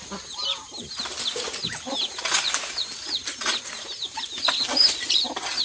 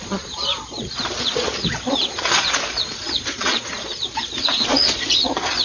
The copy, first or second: second